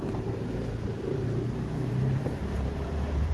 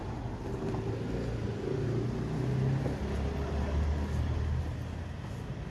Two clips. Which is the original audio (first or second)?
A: second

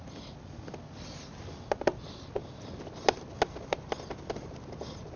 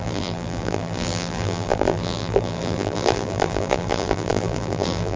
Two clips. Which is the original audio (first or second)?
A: first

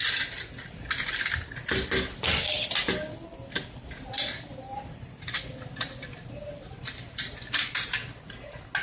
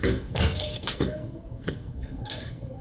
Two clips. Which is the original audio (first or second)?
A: first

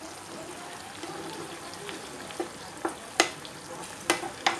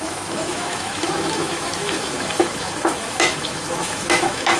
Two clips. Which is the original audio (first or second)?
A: first